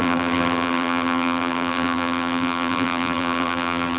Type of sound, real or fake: fake